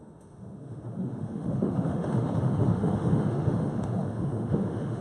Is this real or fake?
fake